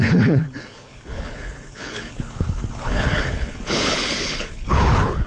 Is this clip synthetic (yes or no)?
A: yes